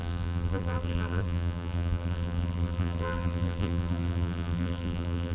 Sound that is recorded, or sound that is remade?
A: remade